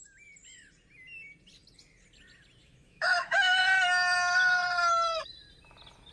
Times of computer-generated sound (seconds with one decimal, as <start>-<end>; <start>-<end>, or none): 2.6-3.6